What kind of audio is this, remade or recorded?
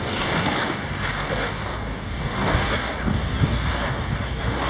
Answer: remade